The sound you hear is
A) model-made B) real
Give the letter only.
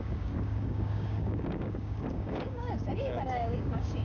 A